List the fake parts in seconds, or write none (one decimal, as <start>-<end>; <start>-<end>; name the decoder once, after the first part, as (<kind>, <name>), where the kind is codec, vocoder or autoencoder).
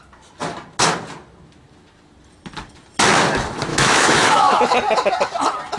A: 3.7-4.6 (autoencoder, DAC-VAE)